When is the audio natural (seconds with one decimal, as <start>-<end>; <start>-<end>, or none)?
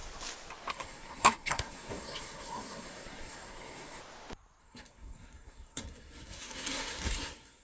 0.0-0.7; 4.0-4.6